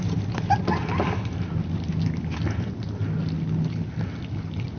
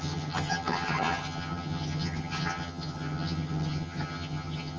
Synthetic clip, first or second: second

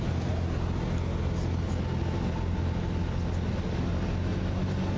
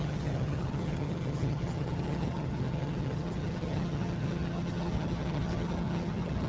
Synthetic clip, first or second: second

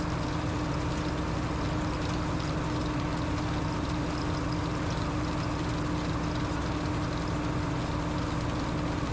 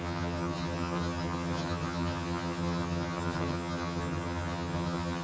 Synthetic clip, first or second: second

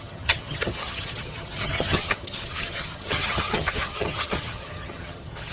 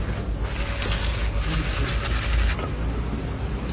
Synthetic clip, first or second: first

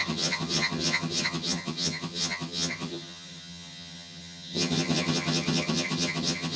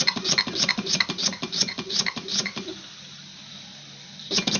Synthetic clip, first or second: first